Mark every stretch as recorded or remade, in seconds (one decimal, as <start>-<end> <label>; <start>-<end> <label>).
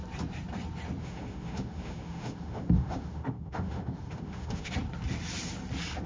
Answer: 0.0-1.0 recorded; 1.0-4.7 remade; 4.7-6.1 recorded